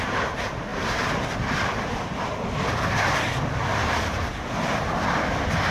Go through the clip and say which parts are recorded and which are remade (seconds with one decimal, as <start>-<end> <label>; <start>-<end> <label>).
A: 0.0-5.7 recorded

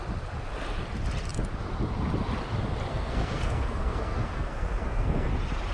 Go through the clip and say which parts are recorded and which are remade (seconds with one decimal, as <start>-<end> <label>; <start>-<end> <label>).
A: 0.0-2.9 recorded; 2.9-5.3 remade; 5.3-5.7 recorded

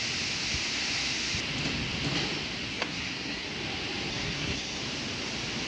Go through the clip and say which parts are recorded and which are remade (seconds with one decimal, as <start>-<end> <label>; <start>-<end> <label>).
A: 0.0-2.7 recorded; 2.7-3.5 remade; 3.5-4.1 recorded; 4.1-4.8 remade; 4.8-5.7 recorded

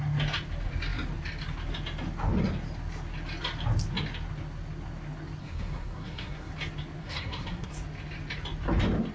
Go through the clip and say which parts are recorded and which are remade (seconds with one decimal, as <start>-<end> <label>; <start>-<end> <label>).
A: 0.0-5.4 recorded; 5.4-6.5 remade; 6.5-7.0 recorded; 7.0-7.7 remade; 7.7-9.1 recorded